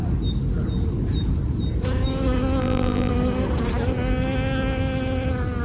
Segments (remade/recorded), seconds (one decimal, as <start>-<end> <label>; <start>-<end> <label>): 0.0-2.6 recorded; 2.6-3.1 remade; 3.1-5.6 recorded